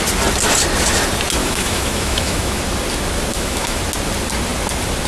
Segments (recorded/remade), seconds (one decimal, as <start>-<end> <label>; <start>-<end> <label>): 0.0-1.4 recorded; 1.4-2.6 remade; 2.6-3.3 recorded; 3.3-3.8 remade; 3.8-5.1 recorded